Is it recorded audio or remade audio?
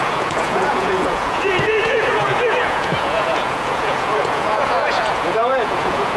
remade